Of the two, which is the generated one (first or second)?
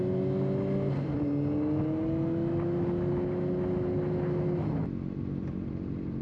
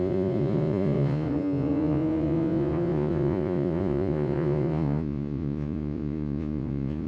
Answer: second